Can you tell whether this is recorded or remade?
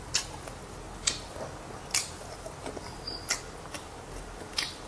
recorded